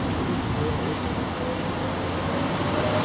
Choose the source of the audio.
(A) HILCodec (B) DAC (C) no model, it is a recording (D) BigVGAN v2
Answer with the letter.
C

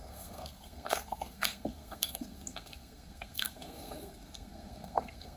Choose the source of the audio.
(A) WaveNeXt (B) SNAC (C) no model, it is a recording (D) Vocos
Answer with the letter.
B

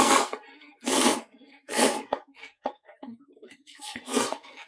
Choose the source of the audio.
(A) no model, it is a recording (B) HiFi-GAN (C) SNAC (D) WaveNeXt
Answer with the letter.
C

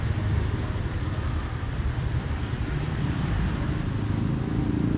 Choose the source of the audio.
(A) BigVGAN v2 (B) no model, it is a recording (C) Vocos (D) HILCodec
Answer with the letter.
A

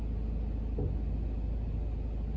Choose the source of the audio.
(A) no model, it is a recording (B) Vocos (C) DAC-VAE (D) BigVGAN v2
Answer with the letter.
A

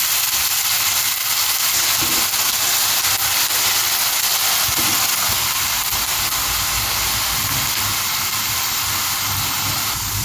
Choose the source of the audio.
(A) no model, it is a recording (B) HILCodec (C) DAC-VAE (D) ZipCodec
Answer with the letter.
A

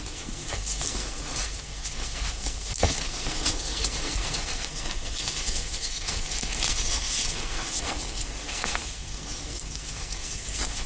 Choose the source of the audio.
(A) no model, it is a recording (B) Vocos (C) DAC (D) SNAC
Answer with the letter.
D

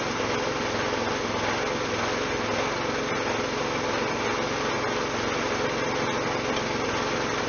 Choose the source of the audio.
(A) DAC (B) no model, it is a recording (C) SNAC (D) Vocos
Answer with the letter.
B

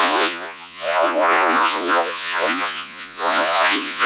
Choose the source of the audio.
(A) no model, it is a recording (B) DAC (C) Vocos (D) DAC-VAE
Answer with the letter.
C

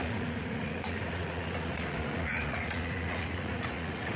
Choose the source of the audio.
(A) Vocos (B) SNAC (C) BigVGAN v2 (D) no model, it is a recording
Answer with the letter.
A